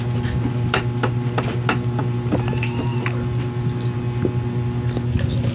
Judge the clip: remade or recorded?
recorded